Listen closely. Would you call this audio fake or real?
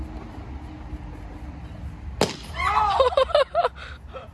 real